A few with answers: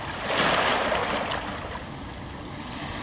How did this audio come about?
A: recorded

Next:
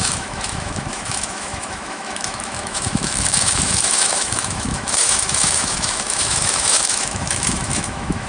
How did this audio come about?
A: remade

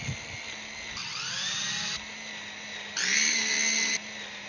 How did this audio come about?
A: recorded